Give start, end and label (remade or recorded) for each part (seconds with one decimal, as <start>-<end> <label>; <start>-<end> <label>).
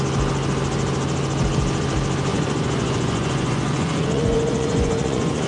0.0-2.3 recorded; 2.3-5.5 remade